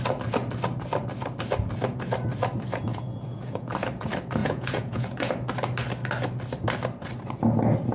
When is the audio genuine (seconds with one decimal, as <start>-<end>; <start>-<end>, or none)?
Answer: 0.0-2.9; 3.7-4.4; 5.3-7.9